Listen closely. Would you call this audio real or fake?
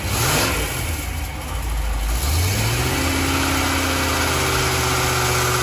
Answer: real